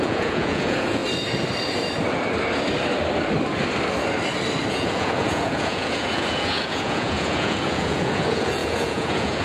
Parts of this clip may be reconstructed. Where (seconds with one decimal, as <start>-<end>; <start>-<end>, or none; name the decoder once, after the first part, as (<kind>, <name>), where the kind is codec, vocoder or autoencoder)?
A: 0.0-1.0 (vocoder, Vocos); 4.7-9.4